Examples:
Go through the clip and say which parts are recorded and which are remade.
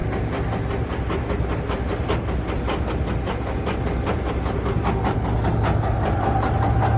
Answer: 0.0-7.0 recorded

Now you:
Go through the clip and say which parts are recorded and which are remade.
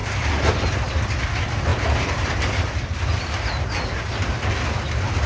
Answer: 0.0-5.3 recorded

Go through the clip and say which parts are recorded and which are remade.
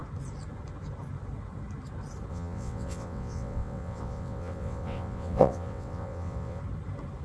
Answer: 0.0-2.3 recorded; 2.3-6.6 remade; 6.6-7.2 recorded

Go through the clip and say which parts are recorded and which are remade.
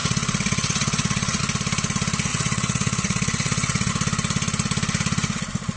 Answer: 0.0-1.4 remade; 1.4-2.3 recorded; 2.3-3.9 remade; 3.9-5.8 recorded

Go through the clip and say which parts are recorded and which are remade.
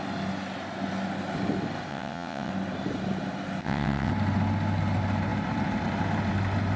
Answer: 0.0-1.9 recorded; 1.9-2.5 remade; 2.5-3.6 recorded; 3.6-4.1 remade; 4.1-6.8 recorded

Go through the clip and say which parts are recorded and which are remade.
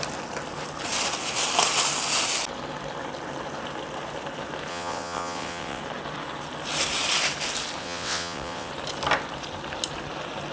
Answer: 0.0-4.7 recorded; 4.7-5.8 remade; 5.8-7.8 recorded; 7.8-8.7 remade; 8.7-10.5 recorded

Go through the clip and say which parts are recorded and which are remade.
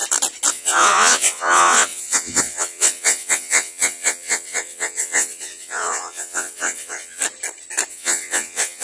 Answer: 0.0-0.5 recorded; 0.5-7.2 remade; 7.2-7.9 recorded; 7.9-8.8 remade